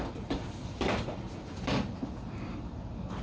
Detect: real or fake fake